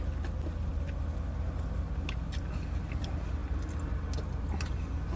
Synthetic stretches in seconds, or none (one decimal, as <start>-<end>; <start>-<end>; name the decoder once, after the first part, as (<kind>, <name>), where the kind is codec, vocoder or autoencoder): none